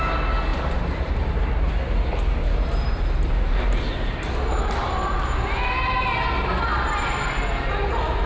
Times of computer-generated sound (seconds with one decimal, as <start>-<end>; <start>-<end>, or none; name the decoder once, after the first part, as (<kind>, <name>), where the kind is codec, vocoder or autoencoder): 0.5-4.3 (vocoder, BigVGAN v2); 6.7-7.3